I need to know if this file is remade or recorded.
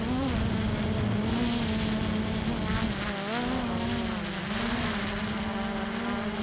recorded